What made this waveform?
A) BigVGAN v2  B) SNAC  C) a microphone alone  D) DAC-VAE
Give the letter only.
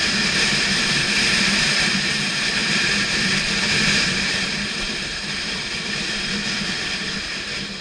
A